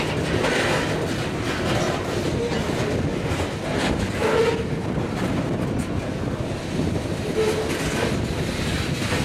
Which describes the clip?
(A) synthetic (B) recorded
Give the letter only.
B